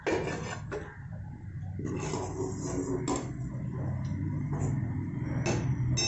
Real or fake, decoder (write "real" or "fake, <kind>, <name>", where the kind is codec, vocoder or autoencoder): real